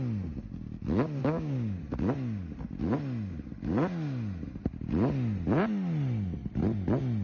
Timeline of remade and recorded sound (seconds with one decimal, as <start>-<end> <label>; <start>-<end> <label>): 0.0-1.2 recorded; 1.2-1.8 remade; 1.8-7.2 recorded